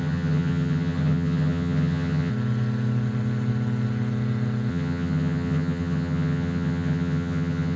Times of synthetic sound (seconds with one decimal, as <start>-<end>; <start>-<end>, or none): 0.0-2.3; 4.7-7.8